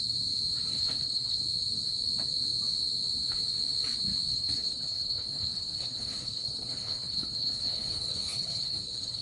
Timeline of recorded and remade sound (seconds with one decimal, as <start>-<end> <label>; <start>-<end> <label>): 0.0-0.7 recorded; 0.7-1.4 remade; 1.4-4.3 recorded; 4.3-9.2 remade